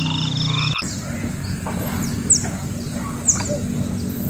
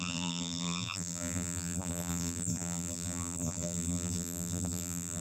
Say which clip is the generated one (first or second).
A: second